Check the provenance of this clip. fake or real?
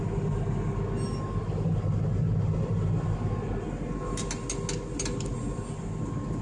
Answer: real